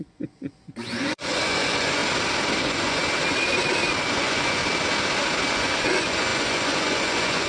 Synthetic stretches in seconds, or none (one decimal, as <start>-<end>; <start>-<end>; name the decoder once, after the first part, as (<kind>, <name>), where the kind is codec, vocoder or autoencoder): 0.0-2.0 (vocoder, Vocos); 2.6-3.0; 4.1-4.6; 5.5-7.5